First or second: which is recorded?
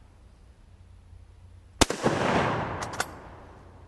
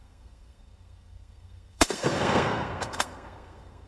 first